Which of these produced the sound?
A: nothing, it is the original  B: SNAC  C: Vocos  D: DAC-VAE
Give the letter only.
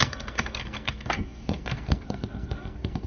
B